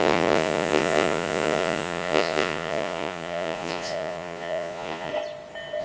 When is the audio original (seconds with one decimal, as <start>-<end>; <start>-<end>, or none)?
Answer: 5.1-5.8